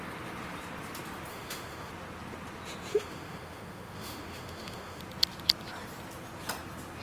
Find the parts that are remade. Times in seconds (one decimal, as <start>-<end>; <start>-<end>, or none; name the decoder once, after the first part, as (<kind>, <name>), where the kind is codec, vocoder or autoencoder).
1.3-1.9 (autoencoder, DAC-VAE); 2.9-5.0